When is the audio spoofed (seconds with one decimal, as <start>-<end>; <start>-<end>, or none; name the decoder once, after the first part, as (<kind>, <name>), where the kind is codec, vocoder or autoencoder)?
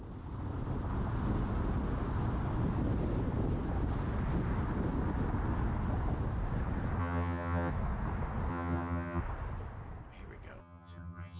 7.0-7.7 (vocoder, HiFi-GAN); 8.5-9.2; 10.6-11.4